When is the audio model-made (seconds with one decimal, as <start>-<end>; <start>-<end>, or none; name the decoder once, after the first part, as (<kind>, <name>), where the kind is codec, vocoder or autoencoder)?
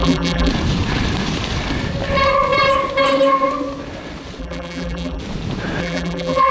0.0-0.5 (vocoder, BigVGAN v2); 4.4-5.2; 5.8-6.5